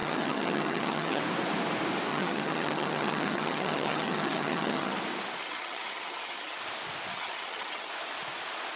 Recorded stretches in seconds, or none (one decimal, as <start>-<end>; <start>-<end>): 1.2-2.1; 5.0-5.4; 6.6-7.1; 7.9-8.8